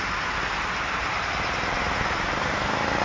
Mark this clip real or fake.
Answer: real